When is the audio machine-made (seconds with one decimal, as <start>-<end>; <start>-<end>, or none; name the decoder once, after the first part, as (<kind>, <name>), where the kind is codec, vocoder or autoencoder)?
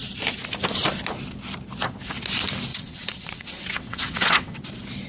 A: 2.7-4.6 (vocoder, WaveNeXt)